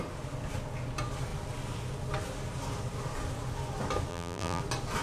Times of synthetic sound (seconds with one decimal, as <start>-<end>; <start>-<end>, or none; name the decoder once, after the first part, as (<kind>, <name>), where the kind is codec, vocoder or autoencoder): 4.1-4.6 (vocoder, BigVGAN v2)

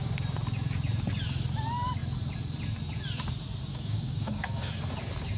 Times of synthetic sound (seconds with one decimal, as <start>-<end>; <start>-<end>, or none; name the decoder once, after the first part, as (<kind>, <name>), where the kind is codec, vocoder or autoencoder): 3.7-4.7 (codec, DAC)